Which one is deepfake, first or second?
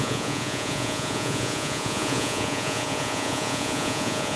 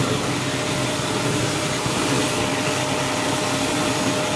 first